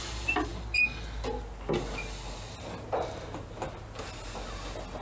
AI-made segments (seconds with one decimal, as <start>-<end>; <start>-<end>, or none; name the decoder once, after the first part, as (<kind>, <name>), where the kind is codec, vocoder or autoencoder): none